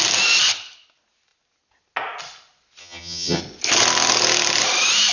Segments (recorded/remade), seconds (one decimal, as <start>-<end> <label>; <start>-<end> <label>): 0.0-2.8 recorded; 2.8-3.4 remade; 3.4-5.1 recorded